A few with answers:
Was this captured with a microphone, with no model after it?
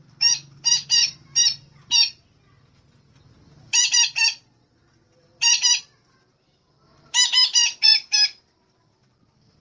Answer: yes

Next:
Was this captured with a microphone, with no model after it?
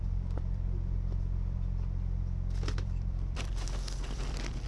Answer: no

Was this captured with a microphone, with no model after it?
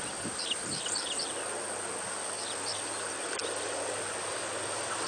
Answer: yes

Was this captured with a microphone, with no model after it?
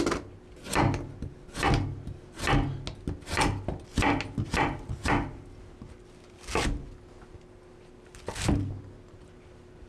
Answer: yes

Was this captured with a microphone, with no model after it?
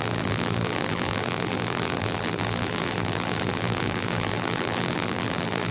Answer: no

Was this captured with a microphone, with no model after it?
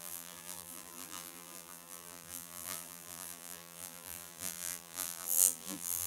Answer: no